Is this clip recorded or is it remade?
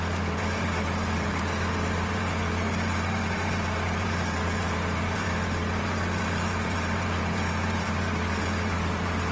remade